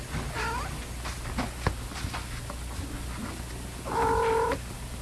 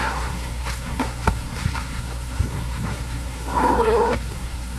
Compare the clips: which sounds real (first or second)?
first